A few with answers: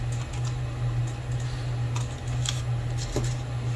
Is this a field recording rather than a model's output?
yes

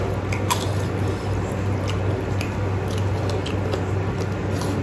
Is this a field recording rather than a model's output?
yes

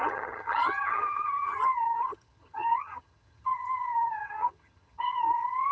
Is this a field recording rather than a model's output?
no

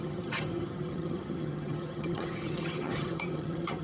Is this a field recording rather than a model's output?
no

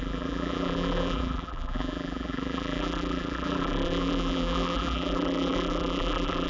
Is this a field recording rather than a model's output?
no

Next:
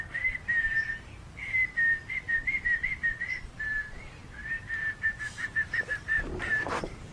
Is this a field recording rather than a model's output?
no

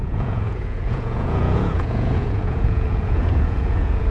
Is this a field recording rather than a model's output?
no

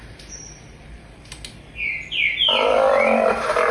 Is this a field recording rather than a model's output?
yes